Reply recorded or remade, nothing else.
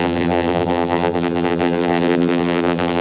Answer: remade